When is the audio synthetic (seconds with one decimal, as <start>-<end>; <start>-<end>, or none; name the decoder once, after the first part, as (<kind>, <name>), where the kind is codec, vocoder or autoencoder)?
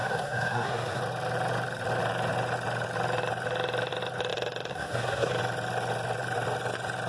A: 0.0-1.0 (codec, SNAC); 4.7-5.3